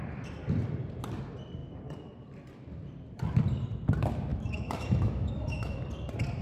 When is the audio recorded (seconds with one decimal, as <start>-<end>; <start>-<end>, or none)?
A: 0.0-4.3; 5.8-6.4